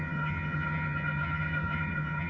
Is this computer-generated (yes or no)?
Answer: yes